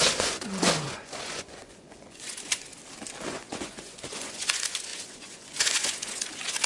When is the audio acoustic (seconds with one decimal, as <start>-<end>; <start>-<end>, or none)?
2.7-3.3